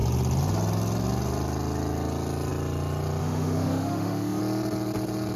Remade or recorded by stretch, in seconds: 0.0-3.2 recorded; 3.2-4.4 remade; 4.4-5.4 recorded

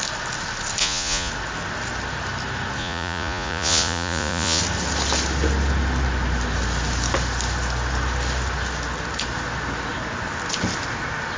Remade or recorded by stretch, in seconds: 0.0-0.8 recorded; 0.8-1.3 remade; 1.3-2.8 recorded; 2.8-4.6 remade; 4.6-11.4 recorded

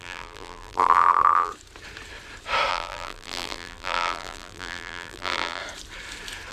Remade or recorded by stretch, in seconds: 0.0-1.5 remade; 1.5-2.7 recorded; 2.7-5.6 remade; 5.6-6.5 recorded